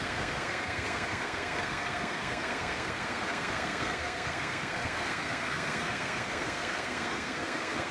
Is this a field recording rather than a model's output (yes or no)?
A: no